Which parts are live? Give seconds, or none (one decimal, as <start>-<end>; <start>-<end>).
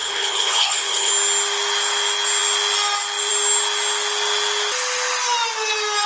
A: 1.1-6.1